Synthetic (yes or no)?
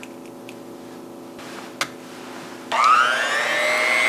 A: no